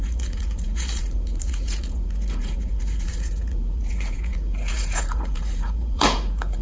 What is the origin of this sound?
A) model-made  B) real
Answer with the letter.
A